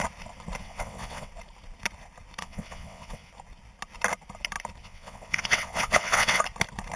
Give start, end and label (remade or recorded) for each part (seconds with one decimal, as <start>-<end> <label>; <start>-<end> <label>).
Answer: 0.0-0.6 recorded; 0.6-1.3 remade; 1.3-2.4 recorded; 2.4-3.3 remade; 3.3-4.8 recorded; 4.8-6.4 remade; 6.4-7.0 recorded